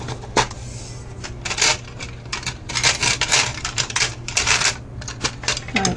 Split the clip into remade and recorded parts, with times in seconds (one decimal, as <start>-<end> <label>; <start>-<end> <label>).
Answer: 0.0-3.5 recorded; 3.5-4.7 remade; 4.7-6.0 recorded